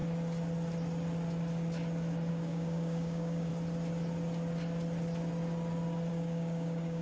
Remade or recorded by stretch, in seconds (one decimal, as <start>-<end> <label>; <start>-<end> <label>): 0.0-2.3 recorded; 2.3-3.5 remade; 3.5-6.1 recorded; 6.1-7.0 remade